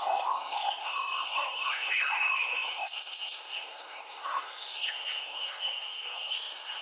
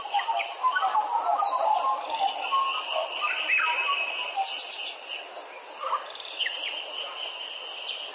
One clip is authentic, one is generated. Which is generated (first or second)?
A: first